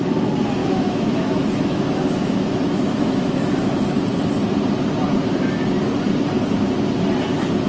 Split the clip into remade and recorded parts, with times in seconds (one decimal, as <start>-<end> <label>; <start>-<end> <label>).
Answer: 0.0-0.6 recorded; 0.6-3.5 remade; 3.5-7.7 recorded